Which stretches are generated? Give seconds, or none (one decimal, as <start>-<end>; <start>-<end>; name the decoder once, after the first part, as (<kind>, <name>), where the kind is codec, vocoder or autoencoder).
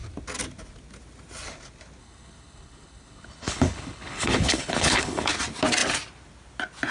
2.0-5.3 (codec, HILCodec)